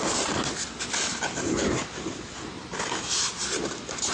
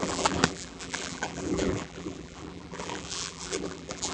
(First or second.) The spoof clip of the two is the second